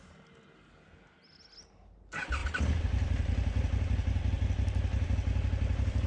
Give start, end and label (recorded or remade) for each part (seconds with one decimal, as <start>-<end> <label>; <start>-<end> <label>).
0.0-6.1 recorded